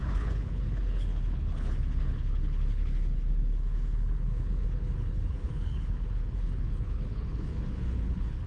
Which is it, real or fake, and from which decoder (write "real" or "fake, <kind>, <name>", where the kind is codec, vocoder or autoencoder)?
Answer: fake, codec, HILCodec